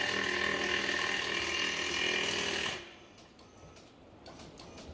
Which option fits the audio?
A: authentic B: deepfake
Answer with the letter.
A